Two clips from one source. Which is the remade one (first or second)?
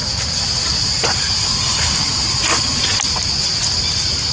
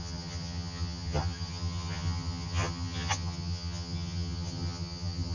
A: second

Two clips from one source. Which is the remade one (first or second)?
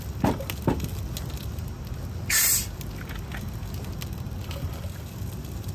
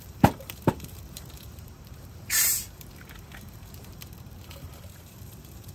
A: second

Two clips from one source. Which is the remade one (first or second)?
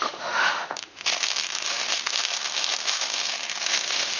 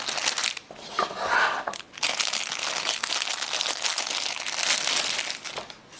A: first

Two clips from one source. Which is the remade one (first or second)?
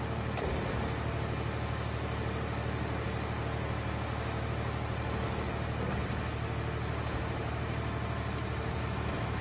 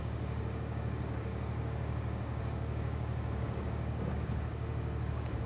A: second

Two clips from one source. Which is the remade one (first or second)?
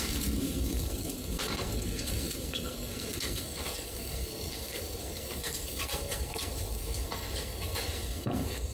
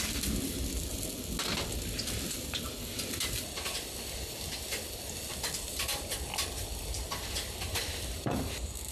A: first